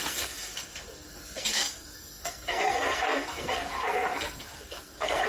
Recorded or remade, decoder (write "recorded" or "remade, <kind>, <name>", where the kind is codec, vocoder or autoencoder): remade, codec, SNAC